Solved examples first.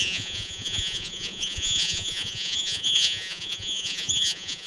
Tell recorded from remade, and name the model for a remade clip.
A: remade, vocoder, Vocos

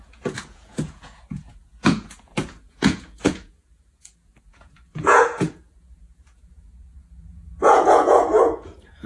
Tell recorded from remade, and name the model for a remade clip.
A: remade, vocoder, Vocos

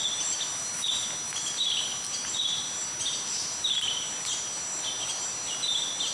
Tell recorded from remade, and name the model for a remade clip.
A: recorded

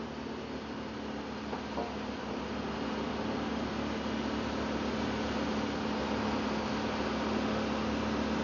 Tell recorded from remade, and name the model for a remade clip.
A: recorded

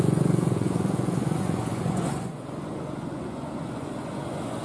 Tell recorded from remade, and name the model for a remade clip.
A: remade, vocoder, Vocos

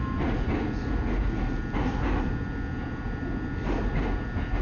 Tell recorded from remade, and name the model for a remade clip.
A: recorded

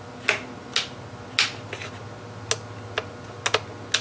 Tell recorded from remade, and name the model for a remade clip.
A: recorded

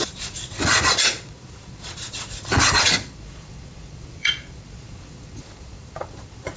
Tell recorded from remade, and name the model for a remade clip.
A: remade, vocoder, Vocos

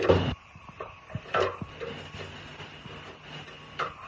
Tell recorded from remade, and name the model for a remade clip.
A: recorded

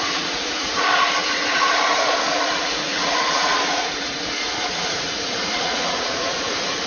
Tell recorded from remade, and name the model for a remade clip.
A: remade, vocoder, Vocos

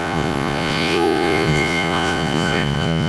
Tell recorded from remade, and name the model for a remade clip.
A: remade, vocoder, Vocos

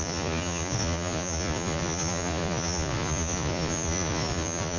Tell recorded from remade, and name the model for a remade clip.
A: remade, vocoder, Vocos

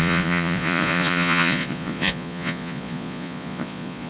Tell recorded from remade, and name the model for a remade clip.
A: remade, vocoder, Vocos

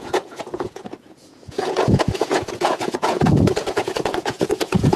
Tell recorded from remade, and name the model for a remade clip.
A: remade, vocoder, Vocos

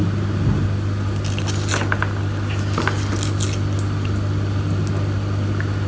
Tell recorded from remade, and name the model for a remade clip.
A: recorded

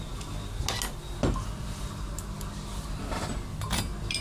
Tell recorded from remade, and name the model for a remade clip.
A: recorded